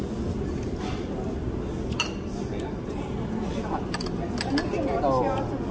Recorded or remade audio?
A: recorded